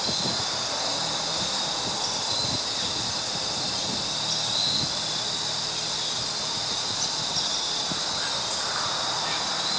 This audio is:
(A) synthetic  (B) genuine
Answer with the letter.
B